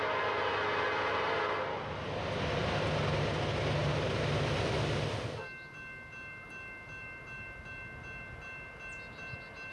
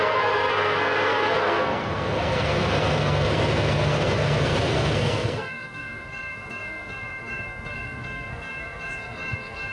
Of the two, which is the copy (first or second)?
second